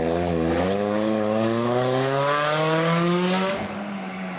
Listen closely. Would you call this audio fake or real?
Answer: fake